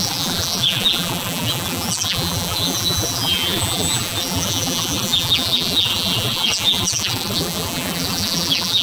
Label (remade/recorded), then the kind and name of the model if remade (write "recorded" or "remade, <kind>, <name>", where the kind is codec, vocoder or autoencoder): remade, vocoder, BigVGAN v2